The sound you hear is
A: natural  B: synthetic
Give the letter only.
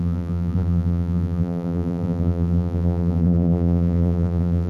B